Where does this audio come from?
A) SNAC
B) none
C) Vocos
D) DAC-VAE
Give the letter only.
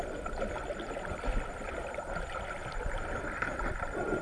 B